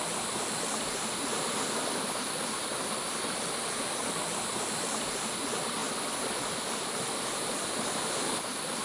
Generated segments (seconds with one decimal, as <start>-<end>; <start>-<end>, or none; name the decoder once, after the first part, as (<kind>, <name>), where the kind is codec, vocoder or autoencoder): none